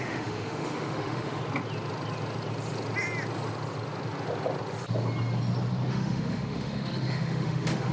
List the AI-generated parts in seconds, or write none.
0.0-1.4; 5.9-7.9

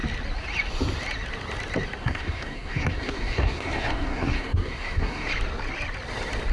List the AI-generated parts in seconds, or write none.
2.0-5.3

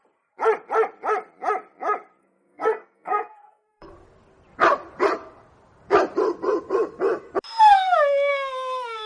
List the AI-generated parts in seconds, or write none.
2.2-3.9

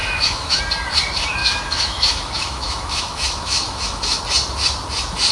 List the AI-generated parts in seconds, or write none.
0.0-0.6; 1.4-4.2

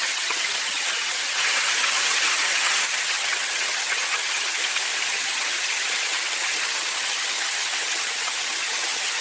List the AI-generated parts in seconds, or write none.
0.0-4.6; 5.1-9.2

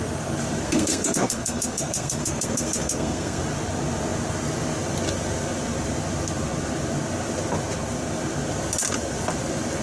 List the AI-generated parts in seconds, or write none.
0.6-3.4

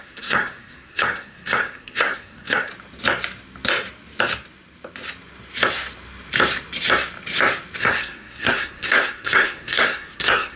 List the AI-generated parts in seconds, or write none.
0.0-2.7; 7.8-10.6

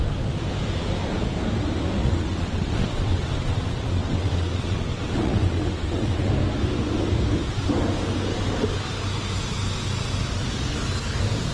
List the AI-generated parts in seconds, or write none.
2.0-6.3